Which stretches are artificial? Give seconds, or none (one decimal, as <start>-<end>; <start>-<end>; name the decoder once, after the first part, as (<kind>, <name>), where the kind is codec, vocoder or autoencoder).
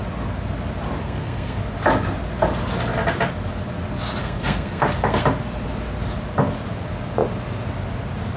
1.0-1.6 (codec, SNAC); 4.2-5.2